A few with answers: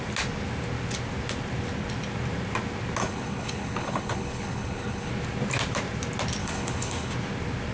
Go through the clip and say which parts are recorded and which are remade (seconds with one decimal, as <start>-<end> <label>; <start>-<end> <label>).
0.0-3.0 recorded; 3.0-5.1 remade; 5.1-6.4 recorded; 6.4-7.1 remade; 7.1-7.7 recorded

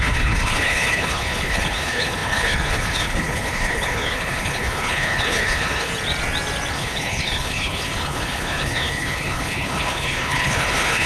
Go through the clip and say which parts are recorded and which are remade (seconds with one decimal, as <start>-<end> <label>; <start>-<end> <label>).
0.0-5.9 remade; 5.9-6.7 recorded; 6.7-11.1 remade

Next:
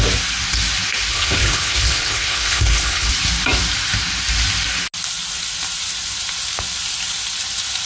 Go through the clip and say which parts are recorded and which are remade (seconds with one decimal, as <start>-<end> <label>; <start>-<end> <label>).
0.0-1.1 recorded; 1.1-3.1 remade; 3.1-7.9 recorded

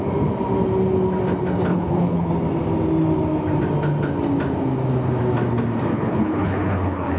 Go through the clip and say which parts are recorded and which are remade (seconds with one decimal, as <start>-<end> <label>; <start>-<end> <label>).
0.0-1.7 recorded; 1.7-2.3 remade; 2.3-5.9 recorded; 5.9-7.2 remade